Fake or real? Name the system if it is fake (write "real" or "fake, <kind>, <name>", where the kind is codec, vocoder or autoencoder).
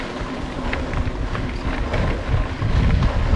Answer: real